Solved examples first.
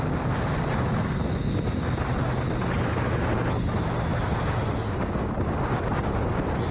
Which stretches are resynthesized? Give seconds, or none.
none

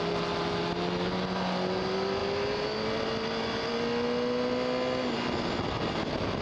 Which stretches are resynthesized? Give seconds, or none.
none